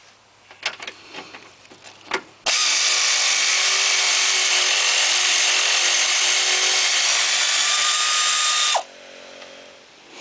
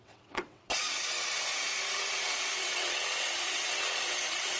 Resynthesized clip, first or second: second